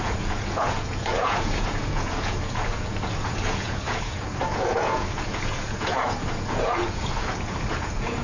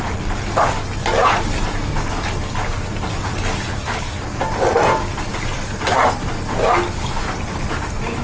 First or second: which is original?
second